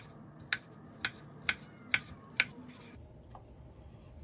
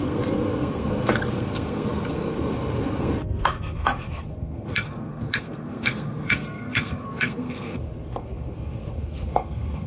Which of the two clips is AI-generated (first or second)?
second